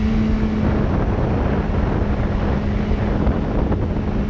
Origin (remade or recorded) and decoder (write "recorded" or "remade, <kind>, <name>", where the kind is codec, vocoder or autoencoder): recorded